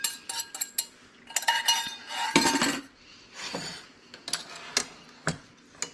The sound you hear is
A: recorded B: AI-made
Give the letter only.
A